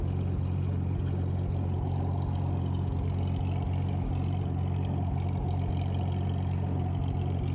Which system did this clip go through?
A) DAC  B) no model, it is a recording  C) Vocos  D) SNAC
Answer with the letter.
B